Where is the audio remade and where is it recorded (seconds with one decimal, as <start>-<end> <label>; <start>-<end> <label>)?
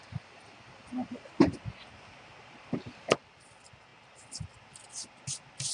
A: 0.0-5.7 recorded